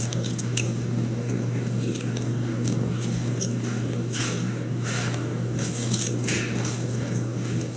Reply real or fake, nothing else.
fake